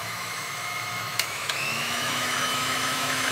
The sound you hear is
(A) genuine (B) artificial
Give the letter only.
B